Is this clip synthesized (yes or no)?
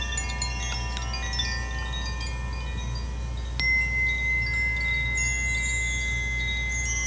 no